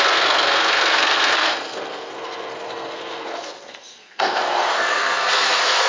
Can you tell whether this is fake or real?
fake